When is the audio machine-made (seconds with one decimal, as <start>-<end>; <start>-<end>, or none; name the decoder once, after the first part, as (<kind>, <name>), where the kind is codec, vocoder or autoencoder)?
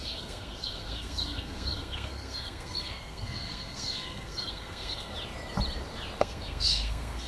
0.0-5.1 (codec, SNAC); 6.2-7.3